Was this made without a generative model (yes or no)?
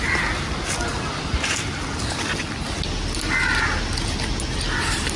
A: yes